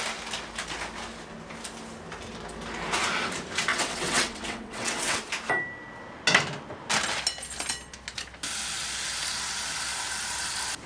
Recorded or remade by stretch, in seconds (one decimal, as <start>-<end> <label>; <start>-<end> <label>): 0.0-3.7 recorded; 3.7-5.2 remade; 5.2-10.9 recorded

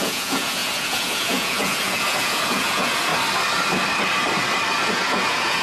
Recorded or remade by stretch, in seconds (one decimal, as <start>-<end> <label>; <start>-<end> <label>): 0.0-3.1 remade; 3.1-4.9 recorded; 4.9-5.6 remade